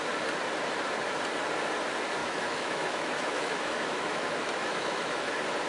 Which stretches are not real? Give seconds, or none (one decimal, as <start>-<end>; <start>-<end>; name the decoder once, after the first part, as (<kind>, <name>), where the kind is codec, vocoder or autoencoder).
2.2-5.3 (autoencoder, DAC-VAE)